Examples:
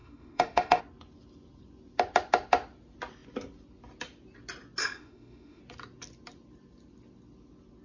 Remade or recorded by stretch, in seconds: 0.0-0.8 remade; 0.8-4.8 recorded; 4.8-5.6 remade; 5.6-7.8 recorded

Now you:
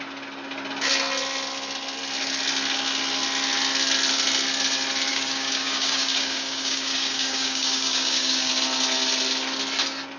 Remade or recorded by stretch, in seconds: 0.0-5.1 recorded; 5.1-8.5 remade; 8.5-10.2 recorded

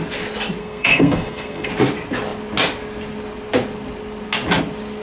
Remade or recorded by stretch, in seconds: 0.0-0.6 recorded; 0.6-1.7 remade; 1.7-5.0 recorded

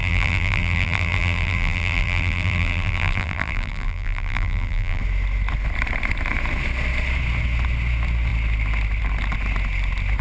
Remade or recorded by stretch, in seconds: 0.0-5.0 remade; 5.0-10.2 recorded

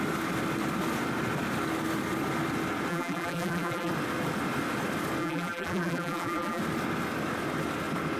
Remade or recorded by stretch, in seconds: 0.0-2.9 recorded; 2.9-3.9 remade; 3.9-5.2 recorded; 5.2-6.6 remade; 6.6-8.2 recorded

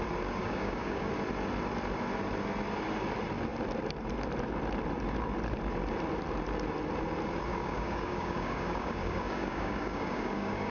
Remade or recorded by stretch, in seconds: 0.0-0.4 recorded; 0.4-1.1 remade; 1.1-7.5 recorded; 7.5-10.7 remade

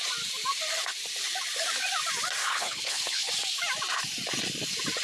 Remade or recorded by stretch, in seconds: 0.0-2.4 recorded; 2.4-3.3 remade; 3.3-5.0 recorded

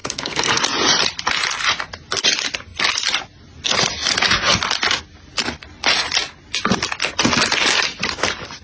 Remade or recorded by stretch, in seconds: 0.0-0.6 remade; 0.6-8.6 recorded